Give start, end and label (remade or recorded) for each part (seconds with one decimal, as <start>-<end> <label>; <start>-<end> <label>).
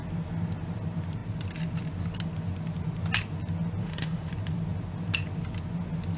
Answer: 0.0-3.8 recorded; 3.8-4.3 remade; 4.3-6.2 recorded